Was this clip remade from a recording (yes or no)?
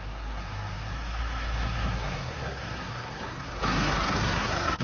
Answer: yes